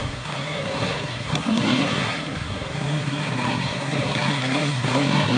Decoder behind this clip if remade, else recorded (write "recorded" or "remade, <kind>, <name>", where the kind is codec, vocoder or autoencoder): remade, codec, SNAC